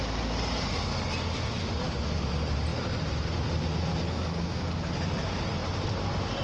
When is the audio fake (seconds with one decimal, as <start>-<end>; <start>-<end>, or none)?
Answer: 2.7-3.5; 5.6-6.4